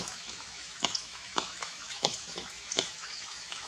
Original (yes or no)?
no